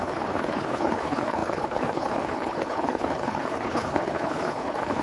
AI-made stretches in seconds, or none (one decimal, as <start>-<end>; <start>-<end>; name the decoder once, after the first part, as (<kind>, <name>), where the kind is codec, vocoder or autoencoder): 0.0-5.0 (codec, HILCodec)